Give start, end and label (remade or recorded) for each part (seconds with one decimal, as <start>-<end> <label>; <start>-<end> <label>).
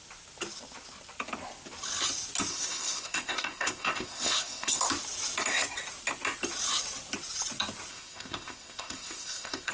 0.0-2.5 recorded; 2.5-4.8 remade; 4.8-7.9 recorded; 7.9-9.7 remade